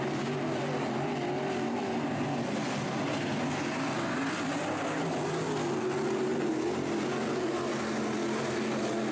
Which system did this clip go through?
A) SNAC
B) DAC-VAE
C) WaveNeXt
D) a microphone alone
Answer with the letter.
D